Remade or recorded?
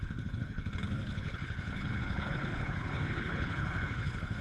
remade